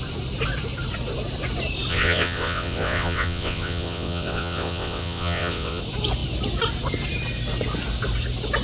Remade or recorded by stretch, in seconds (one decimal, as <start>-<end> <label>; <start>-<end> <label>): 0.0-1.9 recorded; 1.9-5.8 remade; 5.8-8.6 recorded